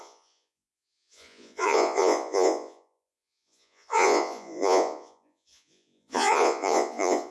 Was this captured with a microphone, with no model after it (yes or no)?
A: no